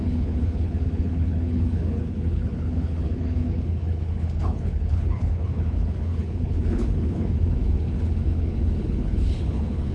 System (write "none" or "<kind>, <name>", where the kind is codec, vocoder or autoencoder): codec, HILCodec